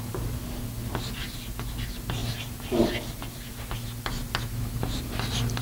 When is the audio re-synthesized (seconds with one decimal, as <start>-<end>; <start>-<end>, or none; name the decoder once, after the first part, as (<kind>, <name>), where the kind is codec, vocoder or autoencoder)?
none